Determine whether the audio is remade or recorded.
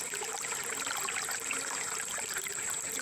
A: recorded